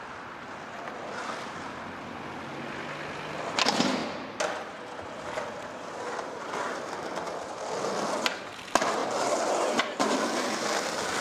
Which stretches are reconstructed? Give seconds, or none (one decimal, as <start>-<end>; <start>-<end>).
9.0-10.1